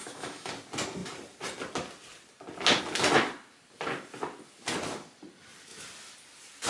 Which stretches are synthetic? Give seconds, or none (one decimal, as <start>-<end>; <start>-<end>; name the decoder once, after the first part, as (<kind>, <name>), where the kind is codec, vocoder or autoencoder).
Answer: 0.0-0.5 (autoencoder, DAC-VAE)